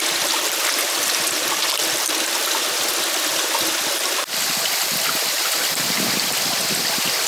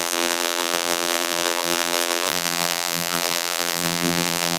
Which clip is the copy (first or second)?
second